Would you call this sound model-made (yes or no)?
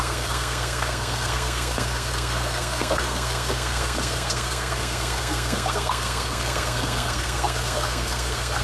yes